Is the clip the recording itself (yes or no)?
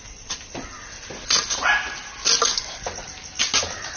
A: yes